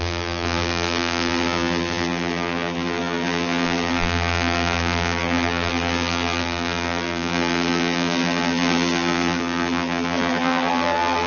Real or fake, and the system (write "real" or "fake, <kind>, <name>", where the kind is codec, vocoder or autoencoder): fake, vocoder, BigVGAN v2